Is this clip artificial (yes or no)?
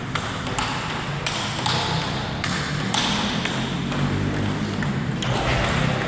no